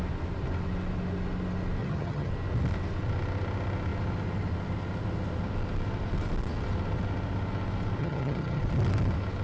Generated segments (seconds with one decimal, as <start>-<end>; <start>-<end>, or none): 1.8-2.3; 8.0-8.6